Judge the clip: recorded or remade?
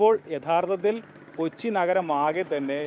remade